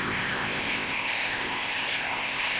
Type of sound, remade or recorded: remade